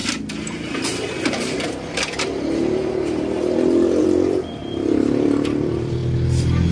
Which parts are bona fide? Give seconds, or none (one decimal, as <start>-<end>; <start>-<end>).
6.0-6.7